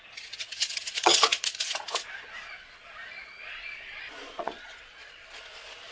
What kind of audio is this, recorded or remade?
remade